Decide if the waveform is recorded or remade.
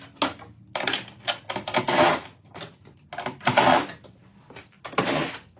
recorded